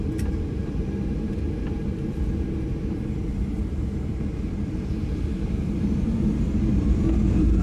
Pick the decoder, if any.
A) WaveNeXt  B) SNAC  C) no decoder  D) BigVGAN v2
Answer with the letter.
D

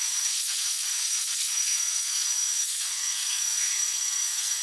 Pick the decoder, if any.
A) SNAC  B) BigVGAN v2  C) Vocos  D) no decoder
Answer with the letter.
A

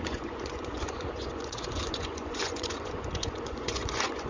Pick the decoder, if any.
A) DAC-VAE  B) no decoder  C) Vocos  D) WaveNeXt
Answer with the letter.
C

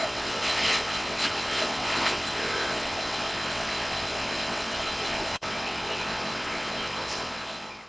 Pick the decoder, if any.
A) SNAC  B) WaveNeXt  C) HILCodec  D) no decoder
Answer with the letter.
B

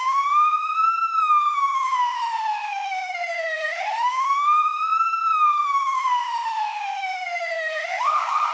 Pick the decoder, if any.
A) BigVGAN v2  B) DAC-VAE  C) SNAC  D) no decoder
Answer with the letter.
B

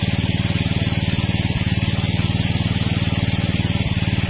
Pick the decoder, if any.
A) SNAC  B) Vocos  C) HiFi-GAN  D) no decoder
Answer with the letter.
D